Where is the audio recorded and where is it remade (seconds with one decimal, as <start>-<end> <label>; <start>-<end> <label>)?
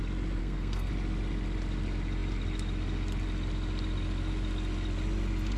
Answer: 0.0-0.4 recorded; 0.4-0.9 remade; 0.9-5.6 recorded